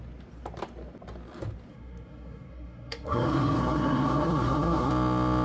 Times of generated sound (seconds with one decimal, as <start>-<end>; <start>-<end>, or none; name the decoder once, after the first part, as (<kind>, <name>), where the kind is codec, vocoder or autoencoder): 1.7-4.9 (codec, SNAC)